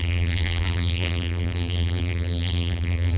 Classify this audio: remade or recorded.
remade